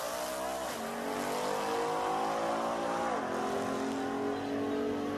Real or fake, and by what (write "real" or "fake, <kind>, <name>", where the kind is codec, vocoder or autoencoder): real